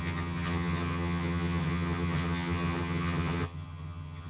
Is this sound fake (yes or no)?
yes